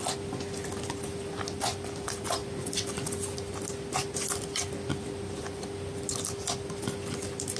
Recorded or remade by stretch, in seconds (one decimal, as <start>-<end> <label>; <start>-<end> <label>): 0.0-7.6 recorded